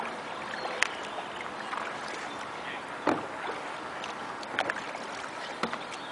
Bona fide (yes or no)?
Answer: yes